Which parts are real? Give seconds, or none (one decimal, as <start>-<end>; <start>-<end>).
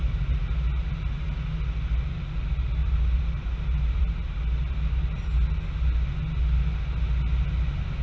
0.0-2.8; 4.4-8.0